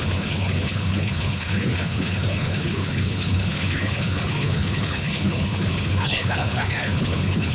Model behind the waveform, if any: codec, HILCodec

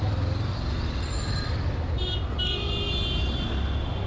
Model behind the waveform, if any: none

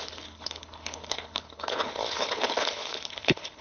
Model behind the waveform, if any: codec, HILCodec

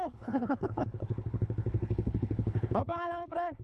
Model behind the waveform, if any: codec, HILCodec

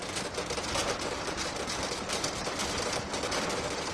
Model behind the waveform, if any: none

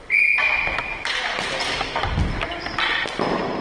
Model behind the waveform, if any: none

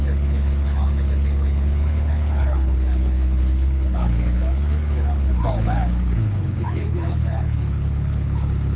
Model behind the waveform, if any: codec, HILCodec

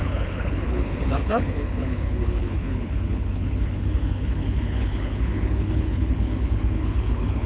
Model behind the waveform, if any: codec, HILCodec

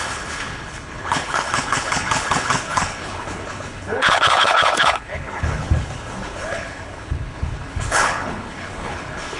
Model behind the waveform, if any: codec, HILCodec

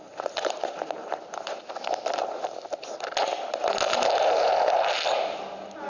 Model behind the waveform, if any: none